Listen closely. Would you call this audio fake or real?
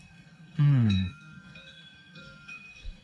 fake